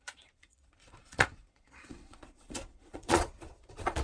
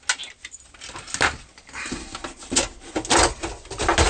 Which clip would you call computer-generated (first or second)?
first